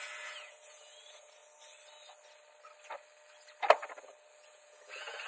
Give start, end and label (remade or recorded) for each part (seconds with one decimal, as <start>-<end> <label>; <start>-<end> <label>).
0.0-1.4 remade; 1.4-4.5 recorded; 4.5-5.3 remade